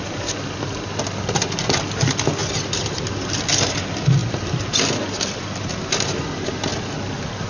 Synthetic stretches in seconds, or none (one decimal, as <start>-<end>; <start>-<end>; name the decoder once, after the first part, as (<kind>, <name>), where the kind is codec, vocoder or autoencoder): none